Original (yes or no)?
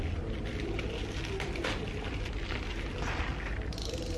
yes